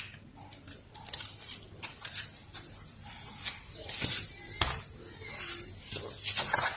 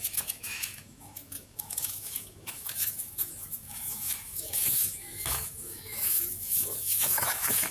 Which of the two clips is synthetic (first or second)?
second